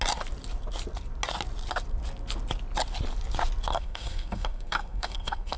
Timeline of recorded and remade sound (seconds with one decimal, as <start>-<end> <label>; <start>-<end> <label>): 0.0-3.7 recorded; 3.7-5.6 remade